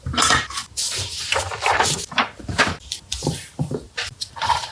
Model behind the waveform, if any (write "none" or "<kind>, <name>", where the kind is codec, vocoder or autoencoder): vocoder, BigVGAN v2